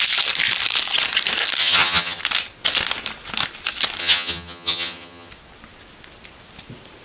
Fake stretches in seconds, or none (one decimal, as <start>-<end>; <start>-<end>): 1.6-2.2; 4.0-5.3